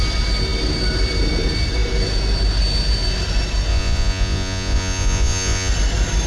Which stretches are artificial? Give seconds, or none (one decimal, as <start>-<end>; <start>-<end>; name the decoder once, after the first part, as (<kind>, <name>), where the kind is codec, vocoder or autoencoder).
3.7-5.7 (vocoder, Vocos)